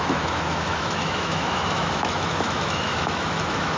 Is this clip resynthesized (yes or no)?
yes